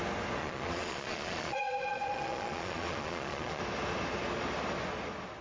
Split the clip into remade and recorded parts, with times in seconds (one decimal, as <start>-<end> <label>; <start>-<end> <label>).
0.0-0.4 recorded; 0.4-3.6 remade; 3.6-5.4 recorded